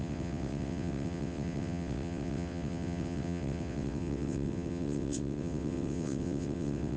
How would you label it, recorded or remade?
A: remade